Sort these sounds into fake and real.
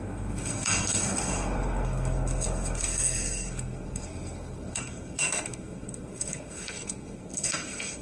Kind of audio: fake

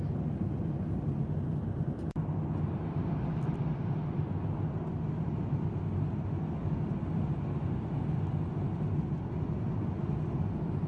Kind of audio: real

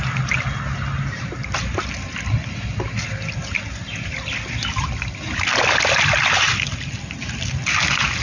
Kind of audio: fake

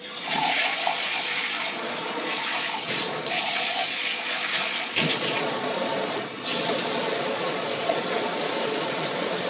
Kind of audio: fake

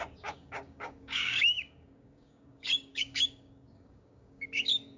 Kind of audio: fake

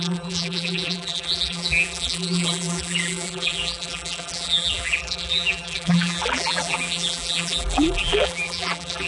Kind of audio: fake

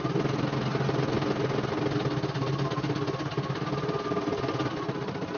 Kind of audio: real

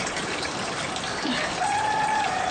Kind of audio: real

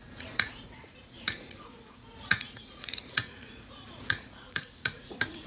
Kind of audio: fake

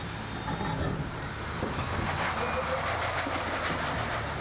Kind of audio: real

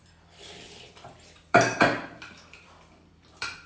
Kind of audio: fake